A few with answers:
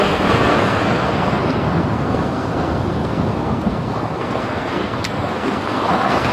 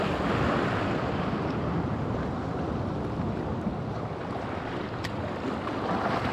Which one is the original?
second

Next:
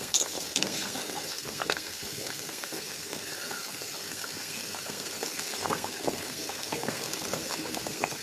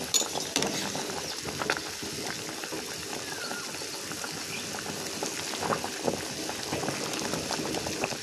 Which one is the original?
second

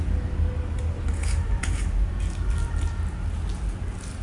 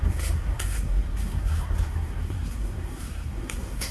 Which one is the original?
first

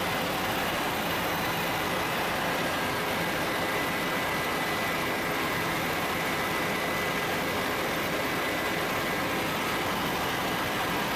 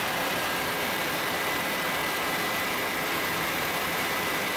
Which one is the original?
first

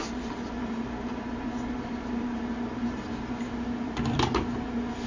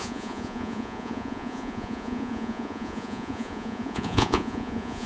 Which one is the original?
first